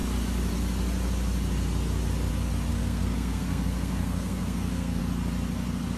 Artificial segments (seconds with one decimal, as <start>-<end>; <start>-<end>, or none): 2.7-5.0